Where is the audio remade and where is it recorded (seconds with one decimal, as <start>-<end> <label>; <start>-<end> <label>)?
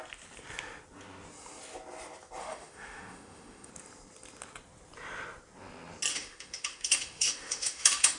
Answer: 0.0-2.4 recorded; 2.4-3.7 remade; 3.7-6.1 recorded; 6.1-8.2 remade